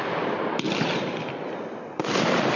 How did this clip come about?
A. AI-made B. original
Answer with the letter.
B